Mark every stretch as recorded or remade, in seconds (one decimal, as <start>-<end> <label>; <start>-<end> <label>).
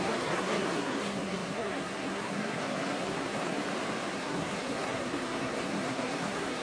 0.0-3.6 remade; 3.6-4.1 recorded; 4.1-6.6 remade